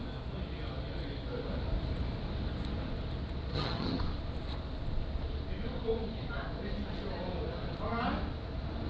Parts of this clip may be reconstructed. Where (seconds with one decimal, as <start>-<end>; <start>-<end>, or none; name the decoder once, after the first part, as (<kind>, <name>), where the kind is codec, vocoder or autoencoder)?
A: 3.5-4.0 (vocoder, HiFi-GAN)